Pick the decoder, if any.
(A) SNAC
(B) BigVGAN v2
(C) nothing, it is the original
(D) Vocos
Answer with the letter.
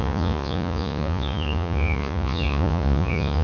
D